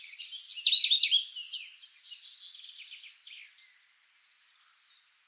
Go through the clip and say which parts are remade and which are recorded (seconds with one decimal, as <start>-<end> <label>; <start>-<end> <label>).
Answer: 0.0-5.3 recorded